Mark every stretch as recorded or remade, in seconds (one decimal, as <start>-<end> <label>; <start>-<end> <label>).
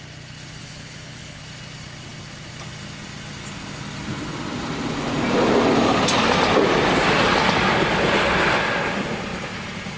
0.0-0.6 recorded; 0.6-1.4 remade; 1.4-10.0 recorded